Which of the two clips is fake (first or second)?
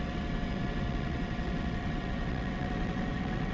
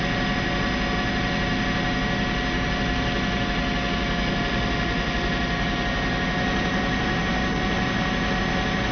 first